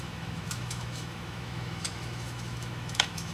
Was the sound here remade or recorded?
remade